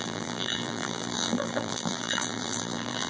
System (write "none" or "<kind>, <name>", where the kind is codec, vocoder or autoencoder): vocoder, BigVGAN v2